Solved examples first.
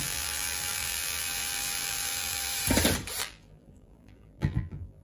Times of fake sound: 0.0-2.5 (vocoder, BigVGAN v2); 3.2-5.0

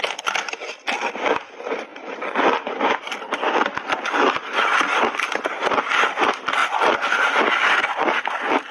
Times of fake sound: 0.0-1.9 (vocoder, BigVGAN v2); 2.9-6.6; 8.2-8.7

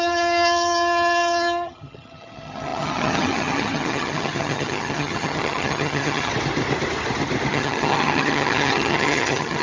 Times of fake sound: 0.0-6.3 (vocoder, HiFi-GAN); 7.5-9.6

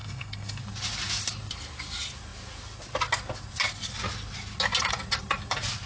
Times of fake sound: 0.0-0.6 (codec, SNAC)

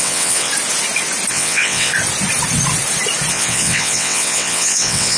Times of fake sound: 0.0-0.5 (vocoder, WaveNeXt); 1.3-1.9; 3.3-5.2

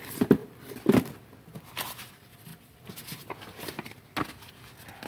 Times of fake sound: none